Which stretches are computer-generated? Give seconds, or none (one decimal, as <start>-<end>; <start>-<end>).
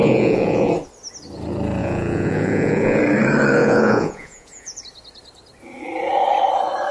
0.0-0.7; 1.8-3.0; 3.6-4.8